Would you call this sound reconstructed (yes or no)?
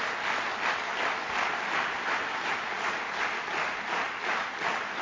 no